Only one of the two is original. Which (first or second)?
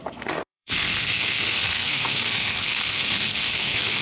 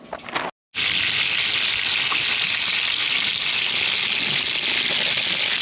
second